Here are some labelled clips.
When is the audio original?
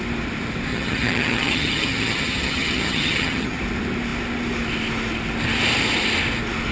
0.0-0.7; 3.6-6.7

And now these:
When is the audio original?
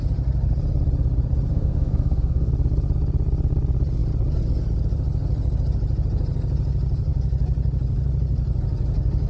0.0-1.5; 2.5-9.3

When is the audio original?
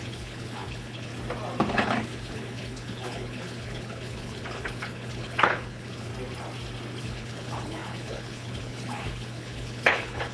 1.1-1.7; 6.1-7.0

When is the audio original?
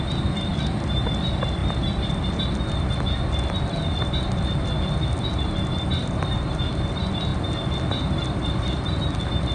0.0-0.5; 1.1-1.6; 2.6-7.3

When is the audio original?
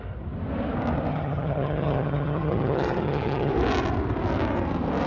0.0-1.1; 3.5-5.1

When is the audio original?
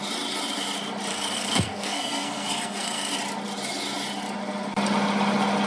0.0-1.1; 3.1-5.7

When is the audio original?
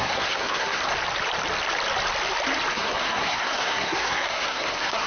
0.8-2.7